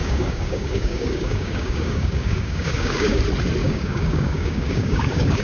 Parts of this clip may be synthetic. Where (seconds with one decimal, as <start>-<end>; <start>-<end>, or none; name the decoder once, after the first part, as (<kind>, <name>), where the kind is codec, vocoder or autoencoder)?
0.0-3.2 (codec, DAC); 3.6-5.4